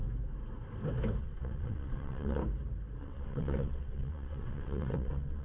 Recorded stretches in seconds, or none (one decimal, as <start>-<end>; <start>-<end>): 0.0-1.2; 2.4-3.0